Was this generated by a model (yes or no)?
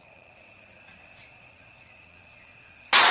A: yes